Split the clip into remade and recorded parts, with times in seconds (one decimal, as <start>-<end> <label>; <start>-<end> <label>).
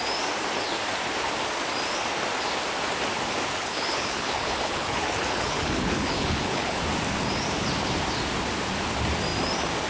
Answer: 0.0-3.6 recorded; 3.6-6.8 remade; 6.8-9.9 recorded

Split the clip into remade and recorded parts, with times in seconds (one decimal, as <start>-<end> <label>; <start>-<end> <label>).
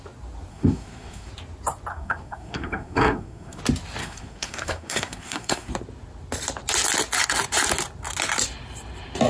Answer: 0.0-0.5 recorded; 0.5-1.3 remade; 1.3-1.9 recorded; 1.9-3.6 remade; 3.6-4.0 recorded; 4.0-5.7 remade; 5.7-9.3 recorded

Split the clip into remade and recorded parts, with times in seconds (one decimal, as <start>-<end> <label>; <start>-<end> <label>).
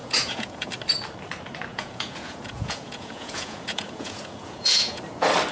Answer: 0.0-0.7 remade; 0.7-1.7 recorded; 1.7-5.0 remade; 5.0-5.5 recorded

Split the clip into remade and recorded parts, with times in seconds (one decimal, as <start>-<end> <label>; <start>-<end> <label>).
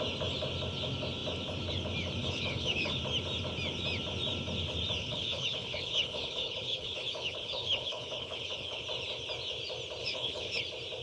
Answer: 0.0-2.2 recorded; 2.2-3.0 remade; 3.0-5.0 recorded; 5.0-8.8 remade; 8.8-10.0 recorded; 10.0-10.6 remade; 10.6-11.0 recorded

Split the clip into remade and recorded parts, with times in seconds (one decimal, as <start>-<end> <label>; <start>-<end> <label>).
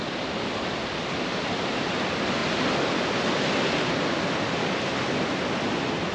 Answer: 0.0-6.1 recorded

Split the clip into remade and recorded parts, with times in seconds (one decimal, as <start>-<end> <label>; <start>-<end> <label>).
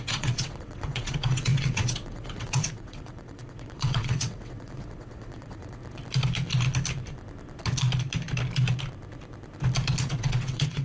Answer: 0.0-5.8 remade; 5.8-10.1 recorded; 10.1-10.8 remade